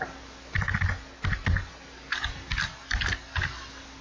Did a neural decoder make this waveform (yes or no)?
no